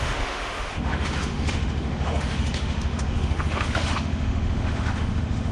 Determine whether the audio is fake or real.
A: fake